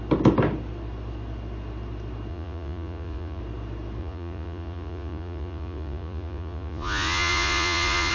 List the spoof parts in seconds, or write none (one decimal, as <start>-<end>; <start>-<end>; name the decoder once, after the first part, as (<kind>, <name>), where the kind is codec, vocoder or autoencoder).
2.3-3.4 (vocoder, Vocos); 4.0-8.1